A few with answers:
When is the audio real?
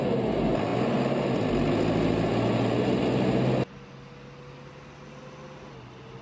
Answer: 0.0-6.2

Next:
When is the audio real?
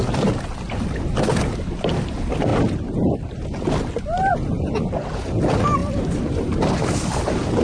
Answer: 0.0-2.5; 4.3-5.8; 6.7-7.6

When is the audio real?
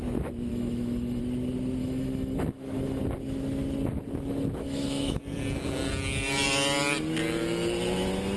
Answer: 0.0-0.5; 1.2-1.8; 3.0-4.6; 5.2-8.4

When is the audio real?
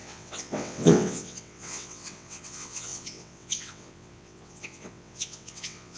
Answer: none